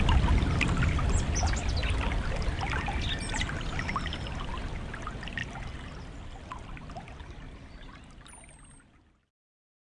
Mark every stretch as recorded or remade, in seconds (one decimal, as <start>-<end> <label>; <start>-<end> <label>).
0.0-9.9 recorded